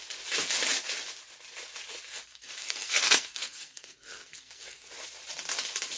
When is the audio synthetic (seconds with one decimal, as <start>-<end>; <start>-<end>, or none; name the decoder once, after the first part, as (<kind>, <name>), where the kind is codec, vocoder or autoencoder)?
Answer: 2.1-4.9 (codec, SNAC)